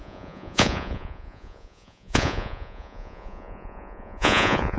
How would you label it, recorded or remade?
remade